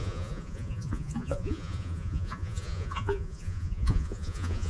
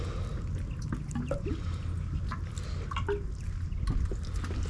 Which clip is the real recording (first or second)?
second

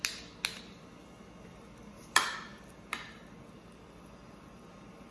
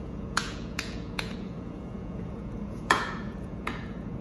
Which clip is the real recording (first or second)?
first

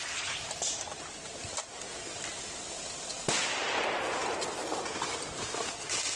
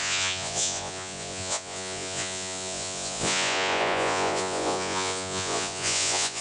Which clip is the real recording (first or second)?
first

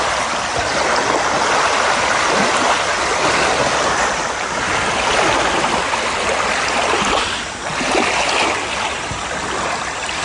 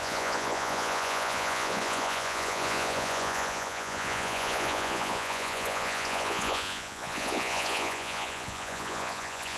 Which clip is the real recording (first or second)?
first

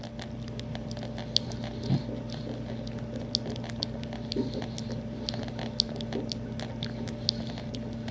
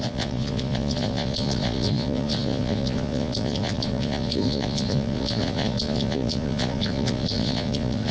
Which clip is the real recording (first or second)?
first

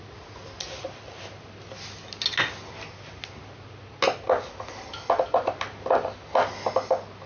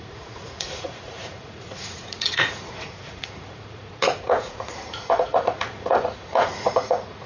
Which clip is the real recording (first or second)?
first